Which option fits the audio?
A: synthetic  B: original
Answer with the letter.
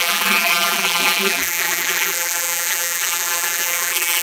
A